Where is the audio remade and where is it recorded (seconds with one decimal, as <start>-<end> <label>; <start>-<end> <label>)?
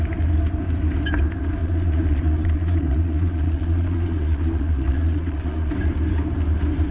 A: 0.0-1.6 recorded; 1.6-5.7 remade; 5.7-6.9 recorded